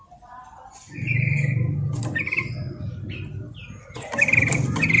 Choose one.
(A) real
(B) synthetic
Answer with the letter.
A